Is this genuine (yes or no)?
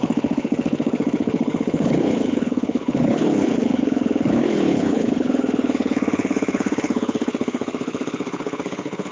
no